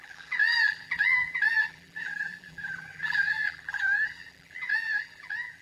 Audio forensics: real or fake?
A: fake